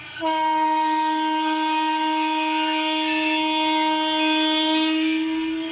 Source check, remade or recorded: remade